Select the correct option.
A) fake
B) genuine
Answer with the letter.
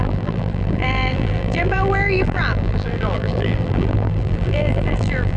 A